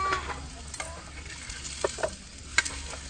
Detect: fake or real real